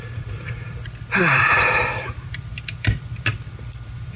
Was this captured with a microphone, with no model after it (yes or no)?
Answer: no